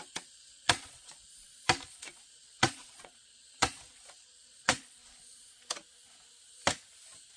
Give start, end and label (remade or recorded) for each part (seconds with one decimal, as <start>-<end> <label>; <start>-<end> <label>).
0.0-1.3 remade; 1.3-1.9 recorded; 1.9-5.0 remade; 5.0-7.4 recorded